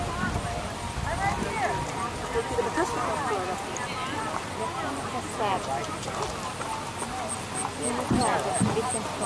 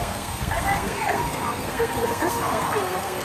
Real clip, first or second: first